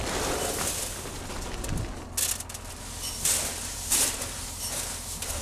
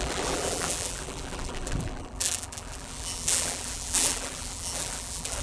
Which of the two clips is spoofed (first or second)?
second